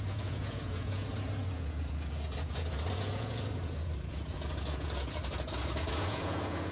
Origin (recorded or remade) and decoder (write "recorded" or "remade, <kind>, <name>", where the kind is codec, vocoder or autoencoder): remade, vocoder, Vocos